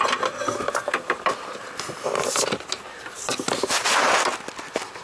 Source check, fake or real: real